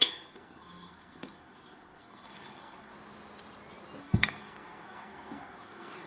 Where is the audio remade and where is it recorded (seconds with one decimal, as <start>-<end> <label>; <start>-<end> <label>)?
0.0-2.9 remade; 2.9-4.0 recorded; 4.0-6.1 remade